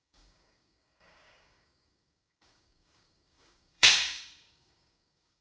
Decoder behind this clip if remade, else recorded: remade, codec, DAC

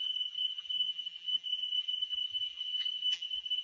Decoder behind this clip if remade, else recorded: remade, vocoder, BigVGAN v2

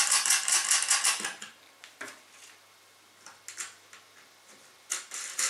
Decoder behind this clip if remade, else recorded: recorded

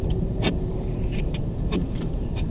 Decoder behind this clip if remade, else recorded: remade, vocoder, BigVGAN v2